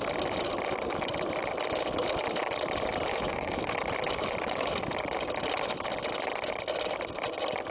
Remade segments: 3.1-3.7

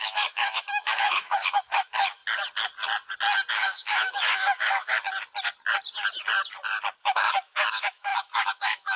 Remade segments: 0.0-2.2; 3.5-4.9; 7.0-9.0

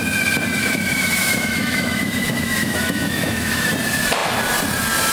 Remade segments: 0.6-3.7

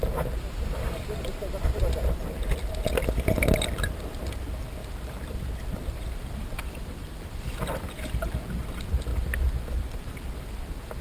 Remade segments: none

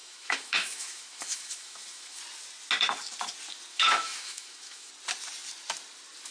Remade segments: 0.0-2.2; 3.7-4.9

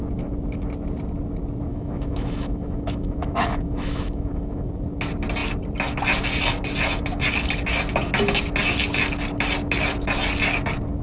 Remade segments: 1.7-4.7